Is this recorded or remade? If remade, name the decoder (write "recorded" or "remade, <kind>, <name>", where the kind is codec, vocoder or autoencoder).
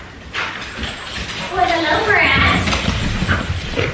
recorded